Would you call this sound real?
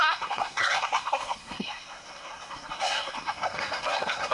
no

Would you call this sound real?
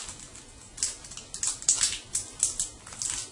yes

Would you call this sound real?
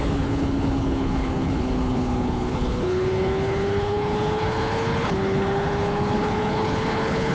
no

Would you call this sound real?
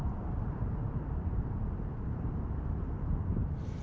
no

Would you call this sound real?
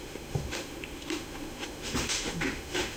no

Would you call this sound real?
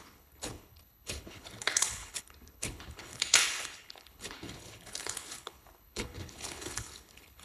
no